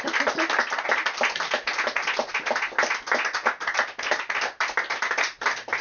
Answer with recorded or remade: recorded